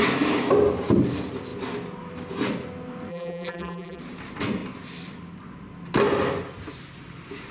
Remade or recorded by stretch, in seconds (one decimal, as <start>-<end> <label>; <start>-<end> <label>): 0.0-3.1 recorded; 3.1-4.0 remade; 4.0-7.5 recorded